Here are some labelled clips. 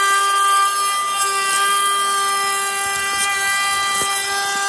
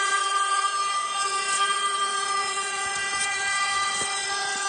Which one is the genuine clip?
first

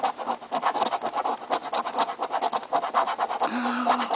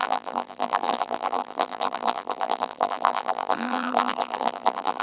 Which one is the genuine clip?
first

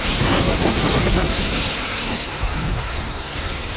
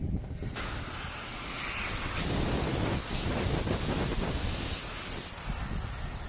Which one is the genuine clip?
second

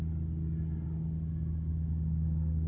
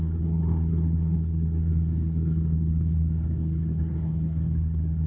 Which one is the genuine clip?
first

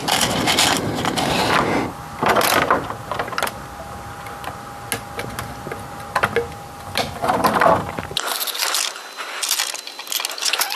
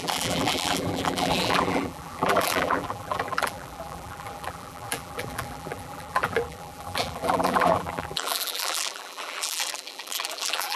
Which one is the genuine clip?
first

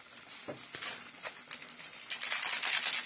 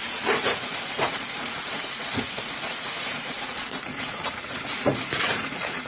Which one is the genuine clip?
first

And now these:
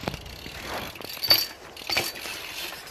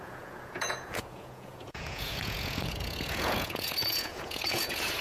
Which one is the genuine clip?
first